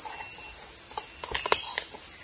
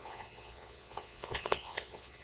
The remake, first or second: second